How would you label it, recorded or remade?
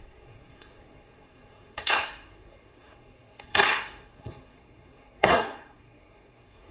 remade